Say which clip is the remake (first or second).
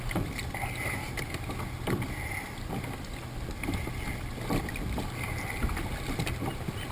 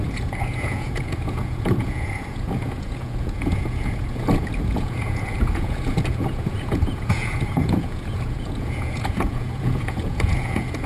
second